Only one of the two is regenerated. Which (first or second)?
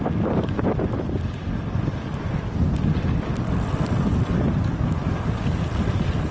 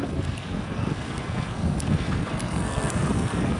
second